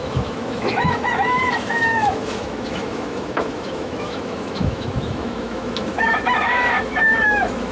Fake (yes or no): yes